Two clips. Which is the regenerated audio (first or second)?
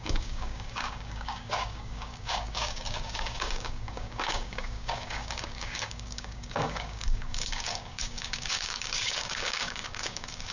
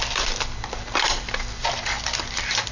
first